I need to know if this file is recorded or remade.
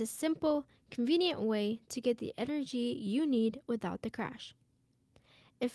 recorded